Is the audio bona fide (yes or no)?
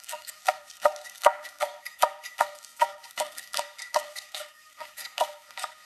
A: no